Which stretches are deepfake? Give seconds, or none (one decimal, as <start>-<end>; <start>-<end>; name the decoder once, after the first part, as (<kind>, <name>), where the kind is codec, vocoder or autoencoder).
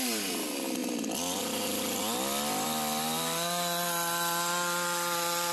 none